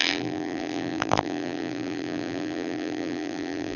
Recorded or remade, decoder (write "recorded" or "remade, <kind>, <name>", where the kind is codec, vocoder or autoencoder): remade, vocoder, BigVGAN v2